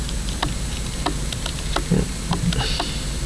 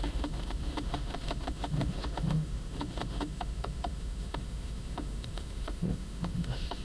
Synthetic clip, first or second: second